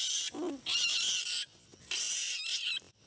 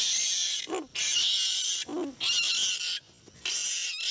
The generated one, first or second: first